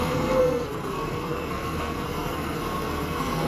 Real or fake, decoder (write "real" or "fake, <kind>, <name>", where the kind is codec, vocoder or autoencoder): fake, codec, SNAC